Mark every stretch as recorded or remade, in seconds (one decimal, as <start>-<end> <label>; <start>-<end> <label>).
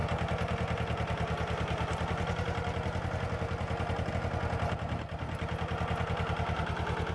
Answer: 0.0-7.1 recorded